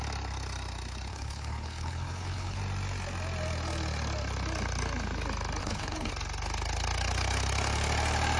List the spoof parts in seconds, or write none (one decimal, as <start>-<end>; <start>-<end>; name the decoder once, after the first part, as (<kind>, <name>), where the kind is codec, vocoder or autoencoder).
1.1-2.6 (codec, HILCodec); 5.6-6.1